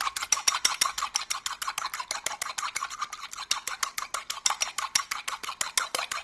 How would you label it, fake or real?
real